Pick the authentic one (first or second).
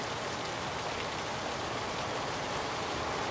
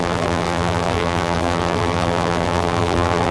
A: first